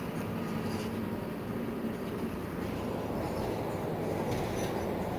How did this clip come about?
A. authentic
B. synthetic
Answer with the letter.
A